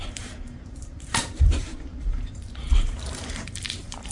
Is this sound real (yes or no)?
no